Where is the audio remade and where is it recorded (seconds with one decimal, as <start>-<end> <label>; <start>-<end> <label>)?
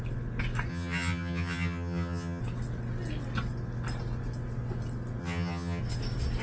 0.0-0.7 recorded; 0.7-2.4 remade; 2.4-5.2 recorded; 5.2-5.8 remade; 5.8-6.4 recorded